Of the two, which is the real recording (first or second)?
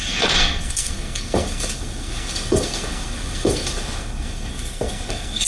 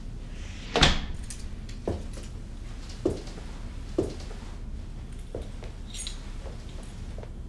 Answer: second